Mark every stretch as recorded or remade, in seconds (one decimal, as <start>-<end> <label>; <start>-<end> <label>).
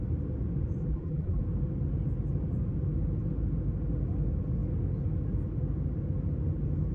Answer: 0.0-0.9 recorded; 0.9-1.4 remade; 1.4-6.9 recorded